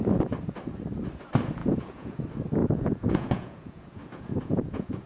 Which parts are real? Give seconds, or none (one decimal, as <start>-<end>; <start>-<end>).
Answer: 0.0-1.6; 2.2-2.6